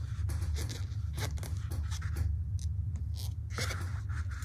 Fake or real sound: real